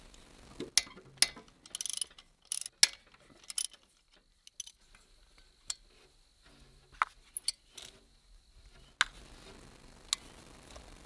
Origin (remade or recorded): recorded